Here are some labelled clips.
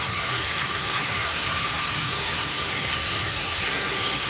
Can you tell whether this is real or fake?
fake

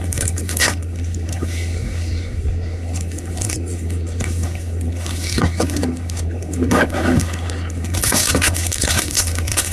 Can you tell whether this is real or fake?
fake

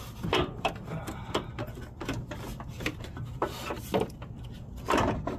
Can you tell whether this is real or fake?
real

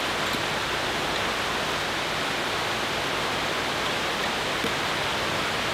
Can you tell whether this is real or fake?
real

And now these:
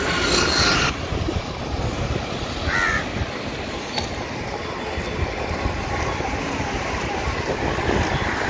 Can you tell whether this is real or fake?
real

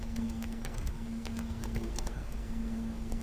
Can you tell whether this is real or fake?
fake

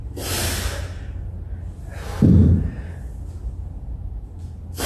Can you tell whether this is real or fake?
real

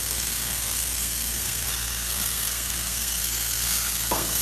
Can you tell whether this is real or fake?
fake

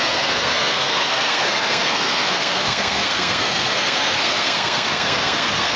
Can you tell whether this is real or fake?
fake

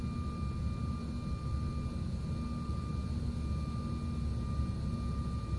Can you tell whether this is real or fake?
real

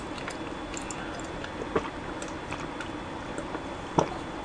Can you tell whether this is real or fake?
real